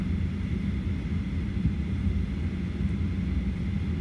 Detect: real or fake real